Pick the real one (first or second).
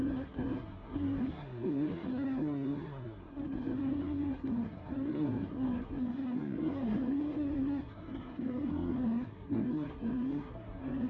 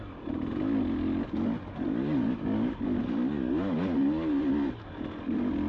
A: second